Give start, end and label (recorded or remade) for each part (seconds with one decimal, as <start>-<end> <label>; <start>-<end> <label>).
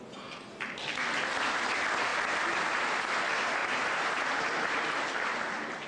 0.0-3.6 recorded; 3.6-4.8 remade; 4.8-5.9 recorded